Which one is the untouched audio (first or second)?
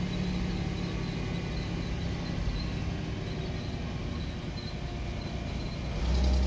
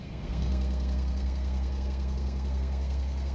first